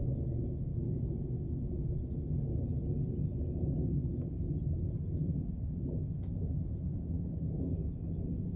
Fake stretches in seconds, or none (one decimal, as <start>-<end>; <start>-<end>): none